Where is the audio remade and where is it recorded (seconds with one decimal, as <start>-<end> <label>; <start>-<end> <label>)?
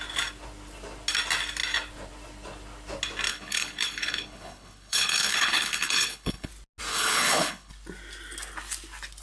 0.0-3.3 recorded; 3.3-6.5 remade; 6.5-6.9 recorded; 6.9-7.7 remade; 7.7-9.2 recorded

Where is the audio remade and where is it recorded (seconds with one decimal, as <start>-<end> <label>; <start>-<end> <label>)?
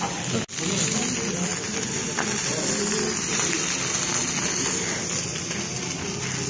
0.0-6.5 recorded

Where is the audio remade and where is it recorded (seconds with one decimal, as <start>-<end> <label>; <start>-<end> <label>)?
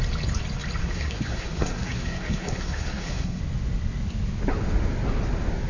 0.0-0.8 recorded; 0.8-3.4 remade; 3.4-5.7 recorded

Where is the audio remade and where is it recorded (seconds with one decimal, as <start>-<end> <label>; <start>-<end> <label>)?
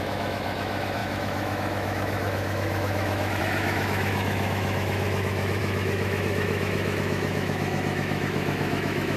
0.0-9.2 remade